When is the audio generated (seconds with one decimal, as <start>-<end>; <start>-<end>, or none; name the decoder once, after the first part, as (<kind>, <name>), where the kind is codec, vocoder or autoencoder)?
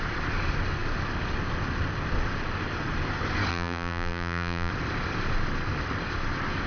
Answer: 3.5-4.7 (vocoder, BigVGAN v2)